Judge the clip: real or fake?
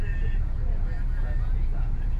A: fake